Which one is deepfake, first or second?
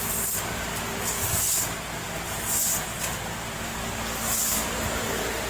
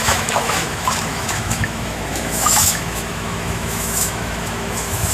second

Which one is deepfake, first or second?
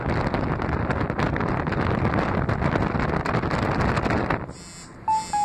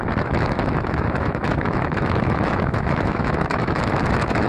second